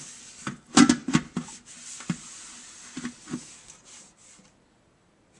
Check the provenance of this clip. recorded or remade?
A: recorded